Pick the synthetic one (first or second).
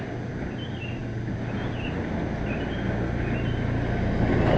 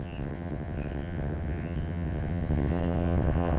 second